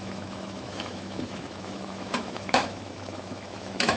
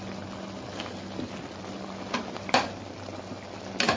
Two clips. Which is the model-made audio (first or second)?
first